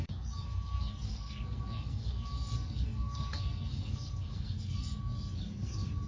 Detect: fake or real fake